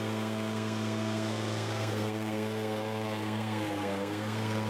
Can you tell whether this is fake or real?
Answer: fake